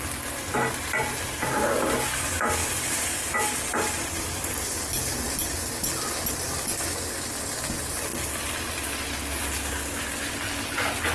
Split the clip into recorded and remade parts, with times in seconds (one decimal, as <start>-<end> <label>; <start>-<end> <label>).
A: 0.0-11.1 recorded